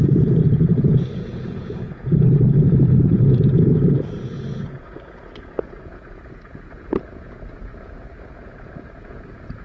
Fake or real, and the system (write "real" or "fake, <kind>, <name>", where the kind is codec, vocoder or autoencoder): fake, vocoder, Vocos